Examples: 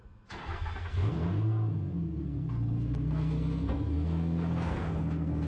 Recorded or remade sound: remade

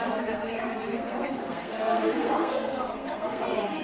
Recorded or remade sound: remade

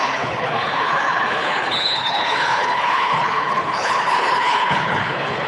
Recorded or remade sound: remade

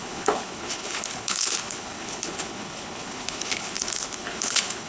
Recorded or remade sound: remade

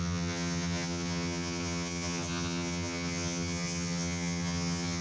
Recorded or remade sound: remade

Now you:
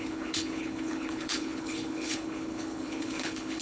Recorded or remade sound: remade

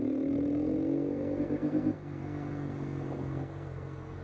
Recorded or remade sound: remade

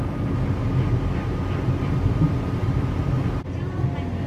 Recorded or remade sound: recorded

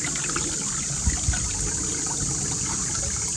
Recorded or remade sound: recorded